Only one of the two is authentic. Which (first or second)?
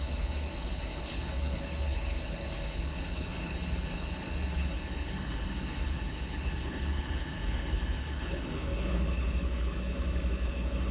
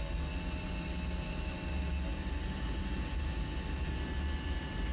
second